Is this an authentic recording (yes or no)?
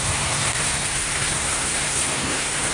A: no